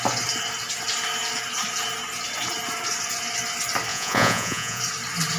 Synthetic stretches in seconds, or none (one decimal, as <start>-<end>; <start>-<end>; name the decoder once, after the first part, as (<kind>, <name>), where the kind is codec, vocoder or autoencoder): 3.9-4.8 (vocoder, Vocos)